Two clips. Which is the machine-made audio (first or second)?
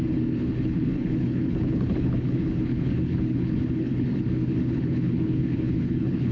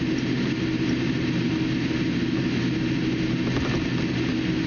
first